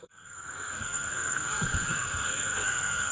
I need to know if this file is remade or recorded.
remade